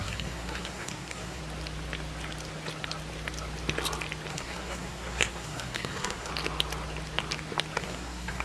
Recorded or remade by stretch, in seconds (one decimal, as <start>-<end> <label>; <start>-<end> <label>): 0.0-1.4 remade; 1.4-4.3 recorded; 4.3-6.3 remade; 6.3-7.8 recorded; 7.8-8.4 remade